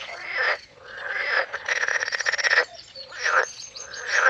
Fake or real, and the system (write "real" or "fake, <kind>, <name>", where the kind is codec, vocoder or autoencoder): fake, vocoder, Vocos